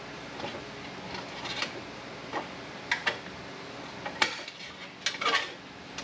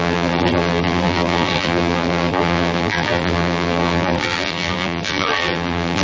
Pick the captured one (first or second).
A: first